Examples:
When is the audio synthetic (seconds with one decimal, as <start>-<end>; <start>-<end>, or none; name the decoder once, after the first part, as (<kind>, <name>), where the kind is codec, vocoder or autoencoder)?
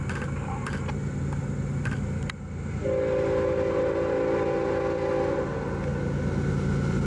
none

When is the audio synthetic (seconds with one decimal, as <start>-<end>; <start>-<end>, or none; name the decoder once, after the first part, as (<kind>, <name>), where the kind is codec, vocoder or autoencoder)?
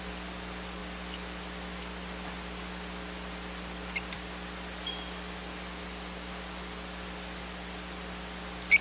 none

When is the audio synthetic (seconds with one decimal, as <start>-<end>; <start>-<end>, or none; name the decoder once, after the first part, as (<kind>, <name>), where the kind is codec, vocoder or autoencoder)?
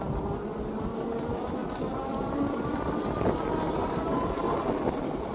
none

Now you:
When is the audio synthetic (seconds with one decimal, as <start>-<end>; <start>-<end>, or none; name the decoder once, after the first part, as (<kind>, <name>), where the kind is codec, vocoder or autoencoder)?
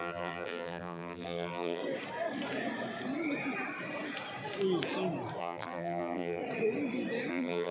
0.0-1.8 (vocoder, BigVGAN v2); 5.4-6.4; 7.3-7.7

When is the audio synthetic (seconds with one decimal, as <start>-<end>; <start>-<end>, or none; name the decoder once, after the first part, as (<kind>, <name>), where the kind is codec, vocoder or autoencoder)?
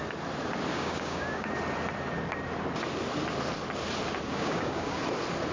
0.7-1.5 (codec, DAC); 4.3-5.0